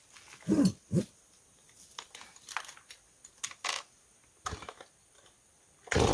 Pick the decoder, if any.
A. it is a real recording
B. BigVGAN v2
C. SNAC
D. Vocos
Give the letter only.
A